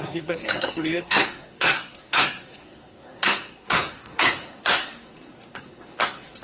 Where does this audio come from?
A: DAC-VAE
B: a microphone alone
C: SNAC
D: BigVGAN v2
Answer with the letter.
C